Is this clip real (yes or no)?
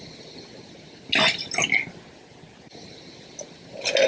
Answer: yes